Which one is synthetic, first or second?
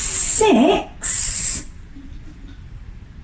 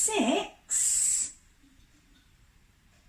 second